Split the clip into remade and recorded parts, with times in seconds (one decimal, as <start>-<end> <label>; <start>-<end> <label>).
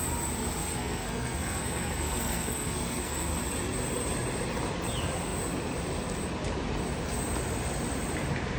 0.0-0.6 recorded; 0.6-3.4 remade; 3.4-8.6 recorded